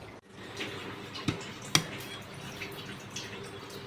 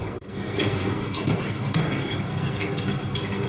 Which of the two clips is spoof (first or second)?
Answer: second